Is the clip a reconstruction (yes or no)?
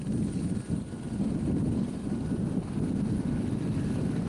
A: yes